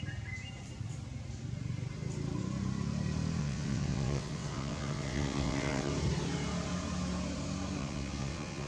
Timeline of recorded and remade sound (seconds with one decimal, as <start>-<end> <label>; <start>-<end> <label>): 0.0-3.4 recorded; 3.4-5.9 remade; 5.9-7.8 recorded; 7.8-8.7 remade